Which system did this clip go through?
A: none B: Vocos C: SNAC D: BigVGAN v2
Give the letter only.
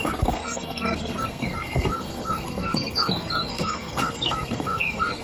C